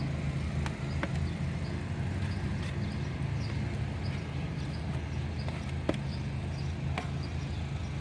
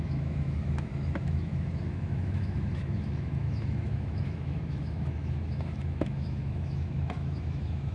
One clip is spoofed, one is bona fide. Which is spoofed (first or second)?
second